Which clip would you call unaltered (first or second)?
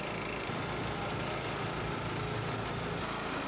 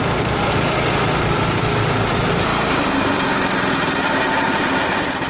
first